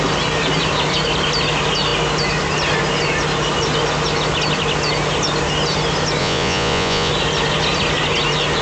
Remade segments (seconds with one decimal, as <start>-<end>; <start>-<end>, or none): 6.2-7.1